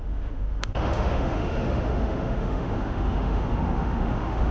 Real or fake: fake